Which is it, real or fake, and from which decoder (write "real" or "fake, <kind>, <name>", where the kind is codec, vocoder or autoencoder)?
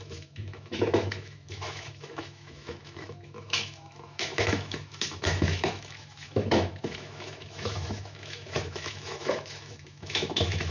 fake, autoencoder, DAC-VAE